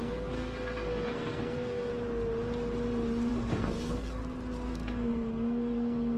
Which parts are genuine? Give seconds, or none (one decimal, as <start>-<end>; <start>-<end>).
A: 1.9-3.3; 4.2-4.7